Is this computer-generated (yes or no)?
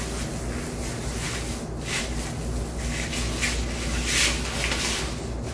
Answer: no